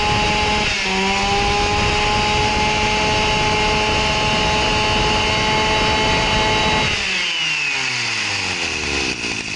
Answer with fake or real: real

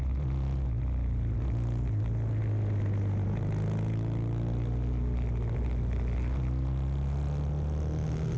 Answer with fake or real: real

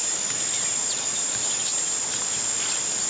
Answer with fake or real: real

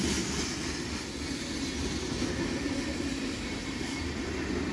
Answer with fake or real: real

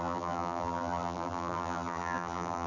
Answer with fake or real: fake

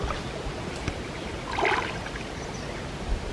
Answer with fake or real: real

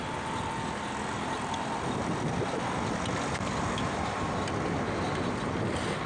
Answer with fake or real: real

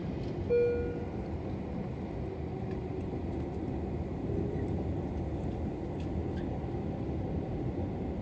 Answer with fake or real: real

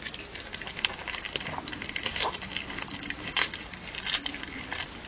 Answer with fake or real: real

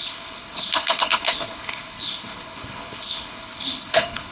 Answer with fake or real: fake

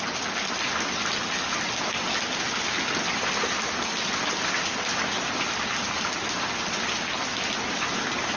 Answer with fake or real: real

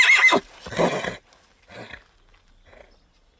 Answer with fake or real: real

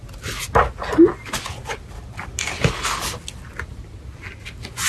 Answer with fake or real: real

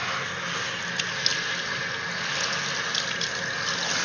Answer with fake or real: real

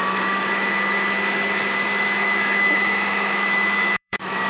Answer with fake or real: fake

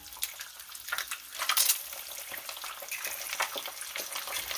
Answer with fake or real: real